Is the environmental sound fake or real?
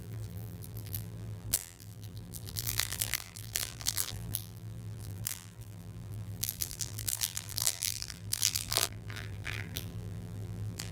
fake